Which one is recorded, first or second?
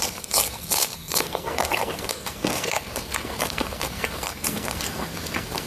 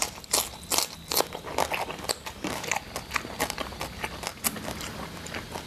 second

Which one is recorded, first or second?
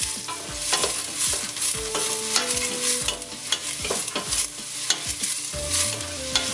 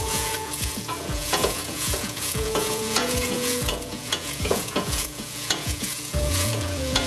first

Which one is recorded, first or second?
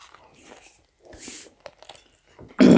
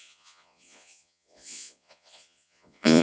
first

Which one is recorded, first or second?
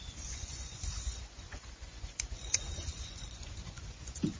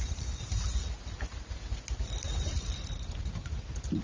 second